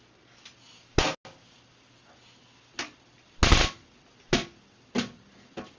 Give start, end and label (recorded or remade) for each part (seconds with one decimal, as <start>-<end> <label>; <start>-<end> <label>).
0.0-5.8 recorded